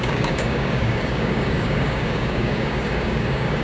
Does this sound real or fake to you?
fake